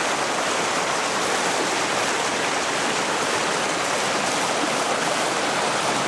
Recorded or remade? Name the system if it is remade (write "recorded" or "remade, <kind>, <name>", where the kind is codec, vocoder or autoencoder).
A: recorded